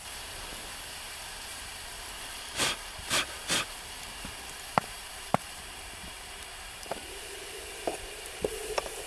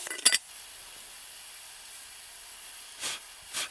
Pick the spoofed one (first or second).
first